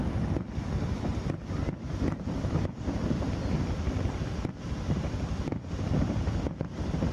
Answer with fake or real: real